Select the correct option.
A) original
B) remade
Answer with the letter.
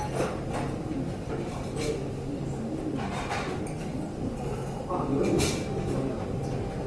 A